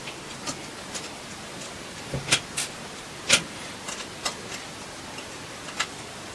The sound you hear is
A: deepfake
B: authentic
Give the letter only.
B